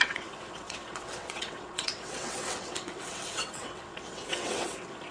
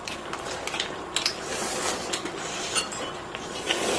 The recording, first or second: second